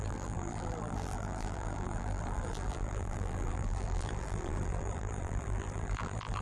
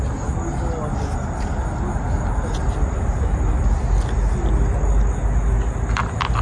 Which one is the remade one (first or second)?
first